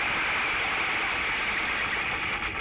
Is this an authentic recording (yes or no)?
no